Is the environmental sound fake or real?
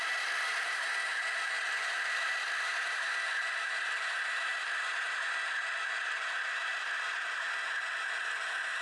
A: real